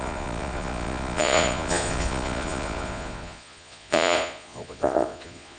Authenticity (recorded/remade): remade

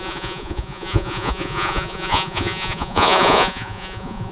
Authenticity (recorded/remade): remade